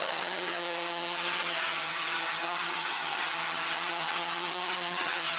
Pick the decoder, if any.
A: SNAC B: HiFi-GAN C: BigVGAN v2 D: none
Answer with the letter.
B